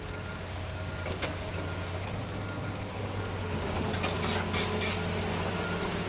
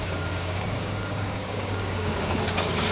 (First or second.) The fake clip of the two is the second